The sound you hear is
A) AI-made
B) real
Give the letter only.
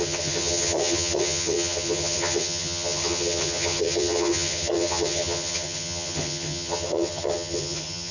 A